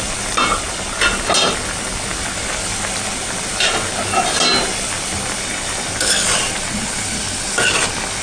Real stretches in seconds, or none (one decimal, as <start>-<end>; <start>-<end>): 0.0-8.2